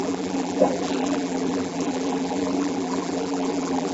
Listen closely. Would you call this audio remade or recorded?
remade